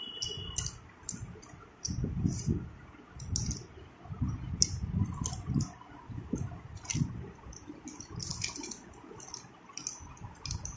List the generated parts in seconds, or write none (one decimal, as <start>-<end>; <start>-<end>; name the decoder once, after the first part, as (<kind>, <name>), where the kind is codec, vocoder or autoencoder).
none